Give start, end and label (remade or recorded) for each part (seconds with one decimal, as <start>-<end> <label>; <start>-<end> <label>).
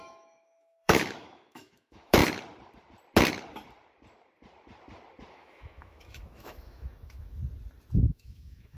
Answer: 0.0-2.2 remade; 2.2-5.3 recorded; 5.3-7.4 remade; 7.4-8.0 recorded; 8.0-8.8 remade